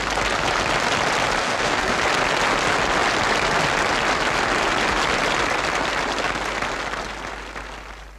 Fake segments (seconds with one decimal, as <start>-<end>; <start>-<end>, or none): 1.4-2.0